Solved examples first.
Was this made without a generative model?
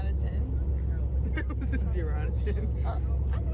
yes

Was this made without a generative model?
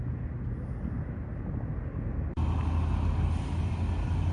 yes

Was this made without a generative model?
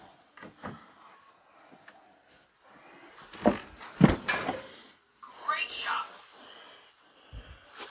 yes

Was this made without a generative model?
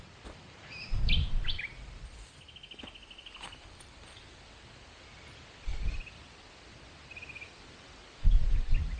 yes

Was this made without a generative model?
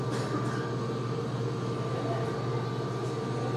yes